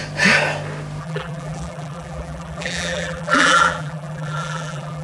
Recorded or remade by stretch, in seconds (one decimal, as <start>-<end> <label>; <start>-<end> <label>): 0.0-1.0 recorded; 1.0-5.0 remade